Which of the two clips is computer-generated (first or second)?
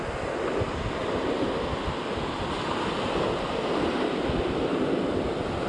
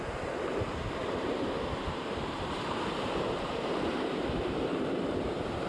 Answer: second